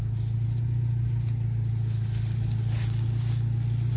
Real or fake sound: real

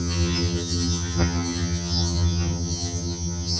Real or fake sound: fake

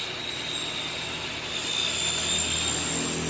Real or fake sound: real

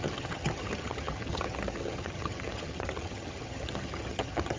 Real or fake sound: fake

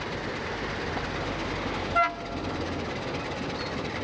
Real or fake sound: real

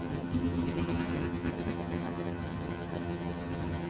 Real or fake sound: fake